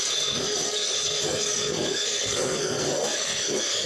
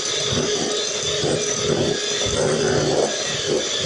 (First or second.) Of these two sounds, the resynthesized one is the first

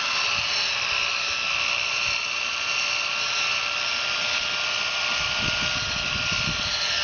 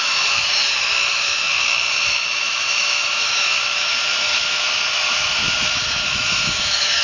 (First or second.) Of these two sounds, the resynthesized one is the second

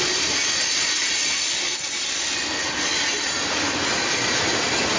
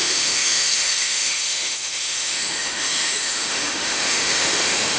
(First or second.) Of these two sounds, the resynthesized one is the second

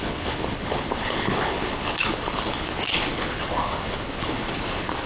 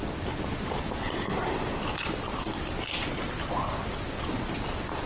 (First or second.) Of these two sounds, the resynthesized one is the first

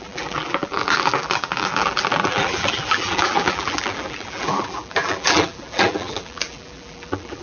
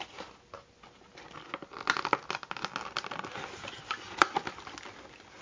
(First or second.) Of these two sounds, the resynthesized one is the first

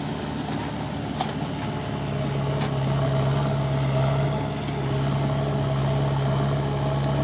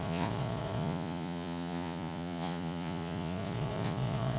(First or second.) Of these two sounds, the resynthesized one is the second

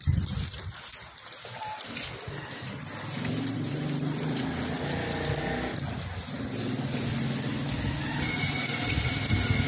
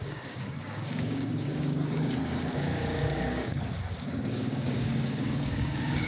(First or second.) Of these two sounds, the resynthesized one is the second